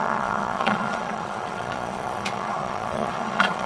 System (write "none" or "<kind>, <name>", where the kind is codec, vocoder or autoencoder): vocoder, Vocos